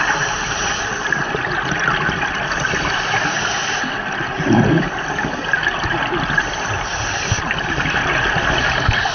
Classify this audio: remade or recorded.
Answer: recorded